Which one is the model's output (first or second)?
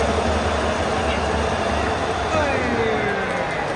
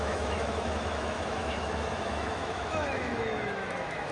second